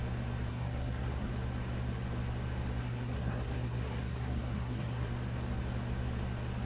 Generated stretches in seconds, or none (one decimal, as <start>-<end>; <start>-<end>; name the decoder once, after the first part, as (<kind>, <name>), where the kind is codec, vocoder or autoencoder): 0.5-1.3 (codec, SNAC); 2.8-5.1